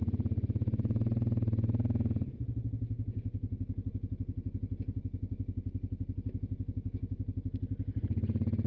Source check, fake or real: real